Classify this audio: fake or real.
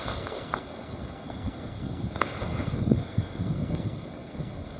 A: fake